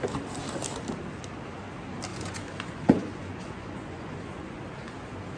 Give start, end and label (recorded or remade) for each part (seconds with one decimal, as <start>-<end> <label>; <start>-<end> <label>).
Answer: 0.0-2.1 recorded; 2.1-4.6 remade; 4.6-5.4 recorded